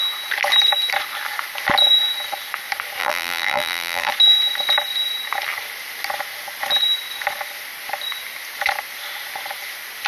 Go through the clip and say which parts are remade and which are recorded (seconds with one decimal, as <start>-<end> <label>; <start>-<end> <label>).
0.0-3.0 recorded; 3.0-4.1 remade; 4.1-10.1 recorded